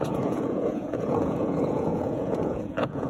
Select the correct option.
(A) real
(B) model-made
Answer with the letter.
B